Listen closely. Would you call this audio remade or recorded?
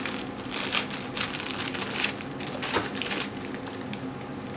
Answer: recorded